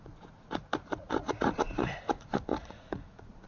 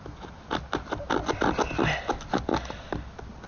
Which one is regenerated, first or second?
first